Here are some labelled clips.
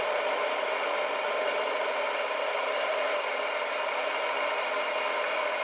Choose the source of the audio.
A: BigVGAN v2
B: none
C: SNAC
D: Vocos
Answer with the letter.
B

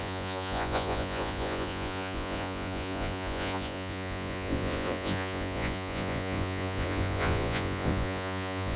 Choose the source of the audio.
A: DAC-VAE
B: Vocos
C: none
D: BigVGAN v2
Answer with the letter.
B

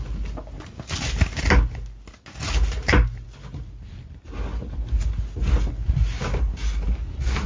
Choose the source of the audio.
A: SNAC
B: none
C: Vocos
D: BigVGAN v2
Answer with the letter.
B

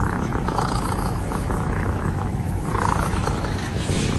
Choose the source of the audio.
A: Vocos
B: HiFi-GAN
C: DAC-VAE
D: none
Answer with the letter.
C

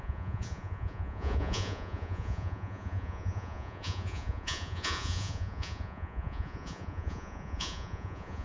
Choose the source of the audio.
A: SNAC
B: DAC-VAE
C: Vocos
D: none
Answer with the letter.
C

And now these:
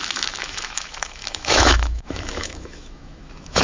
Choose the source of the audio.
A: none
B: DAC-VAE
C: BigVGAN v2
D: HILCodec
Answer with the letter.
B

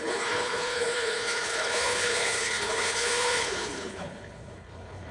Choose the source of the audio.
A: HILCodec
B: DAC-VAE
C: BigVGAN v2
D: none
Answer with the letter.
A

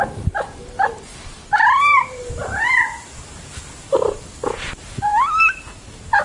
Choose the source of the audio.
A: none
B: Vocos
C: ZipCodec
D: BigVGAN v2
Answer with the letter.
D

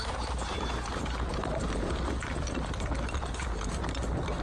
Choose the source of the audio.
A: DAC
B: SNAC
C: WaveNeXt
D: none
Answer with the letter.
D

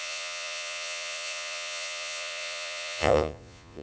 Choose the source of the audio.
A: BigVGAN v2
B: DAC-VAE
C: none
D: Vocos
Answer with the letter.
D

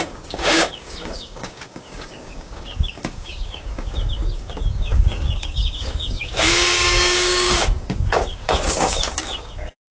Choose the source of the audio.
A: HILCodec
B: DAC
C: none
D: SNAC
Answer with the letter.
B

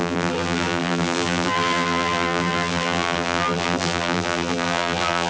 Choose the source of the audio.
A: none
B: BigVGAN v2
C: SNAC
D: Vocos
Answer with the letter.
B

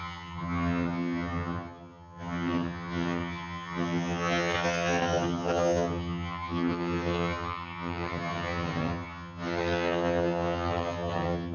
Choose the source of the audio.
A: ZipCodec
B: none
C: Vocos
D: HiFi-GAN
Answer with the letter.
D